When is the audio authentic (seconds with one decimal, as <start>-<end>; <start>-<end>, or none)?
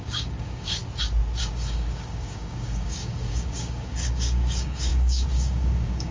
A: 0.8-1.4